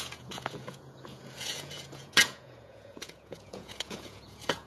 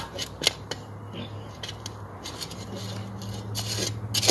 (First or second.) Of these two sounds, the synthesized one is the first